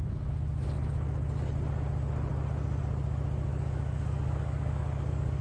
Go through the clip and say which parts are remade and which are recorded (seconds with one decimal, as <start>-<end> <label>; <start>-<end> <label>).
0.0-3.5 recorded; 3.5-5.4 remade